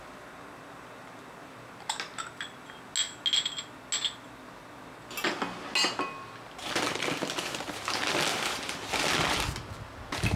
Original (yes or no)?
yes